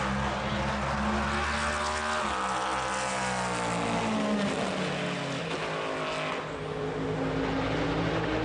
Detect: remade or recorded recorded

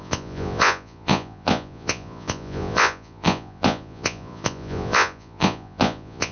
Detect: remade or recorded remade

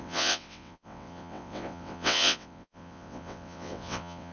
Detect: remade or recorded remade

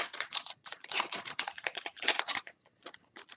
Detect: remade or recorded remade